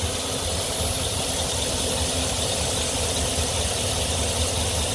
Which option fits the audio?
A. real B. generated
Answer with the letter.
A